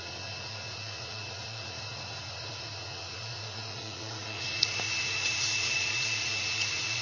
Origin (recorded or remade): remade